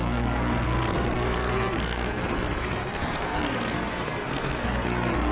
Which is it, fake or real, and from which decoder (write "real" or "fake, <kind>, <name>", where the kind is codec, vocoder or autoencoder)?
fake, codec, SNAC